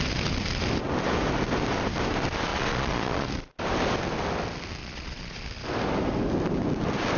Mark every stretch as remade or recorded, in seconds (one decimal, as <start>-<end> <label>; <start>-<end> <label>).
0.0-2.5 recorded; 2.5-3.3 remade; 3.3-4.8 recorded; 4.8-5.4 remade; 5.4-7.2 recorded

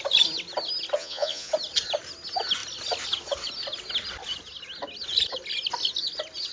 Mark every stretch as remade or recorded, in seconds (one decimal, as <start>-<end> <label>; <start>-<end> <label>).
0.0-1.0 recorded; 1.0-1.5 remade; 1.5-6.5 recorded